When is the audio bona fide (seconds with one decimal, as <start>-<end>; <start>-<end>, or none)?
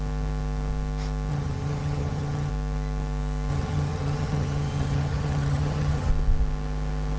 0.0-1.3; 2.5-3.5; 6.1-7.2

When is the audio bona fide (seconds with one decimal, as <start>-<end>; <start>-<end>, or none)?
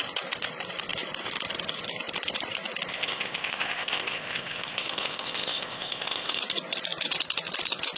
0.0-2.9; 6.4-8.0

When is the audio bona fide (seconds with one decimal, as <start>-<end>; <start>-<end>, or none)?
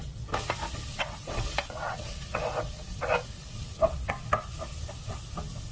0.0-0.9; 4.1-5.7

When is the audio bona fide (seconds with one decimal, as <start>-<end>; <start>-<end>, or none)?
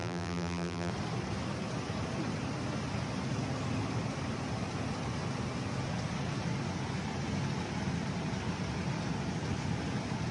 0.9-10.3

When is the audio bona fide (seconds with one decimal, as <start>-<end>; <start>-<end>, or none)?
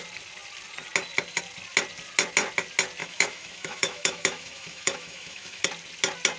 0.0-3.0; 5.6-6.4